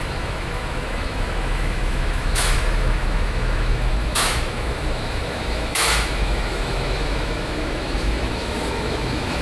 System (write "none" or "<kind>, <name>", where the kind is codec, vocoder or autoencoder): autoencoder, DAC-VAE